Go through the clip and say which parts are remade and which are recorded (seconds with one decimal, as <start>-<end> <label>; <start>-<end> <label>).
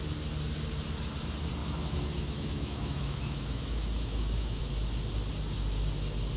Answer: 0.0-1.6 recorded; 1.6-4.6 remade; 4.6-6.4 recorded